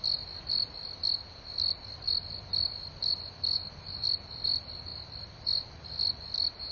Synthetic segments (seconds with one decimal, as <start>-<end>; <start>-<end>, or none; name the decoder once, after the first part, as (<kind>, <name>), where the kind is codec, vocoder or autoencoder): none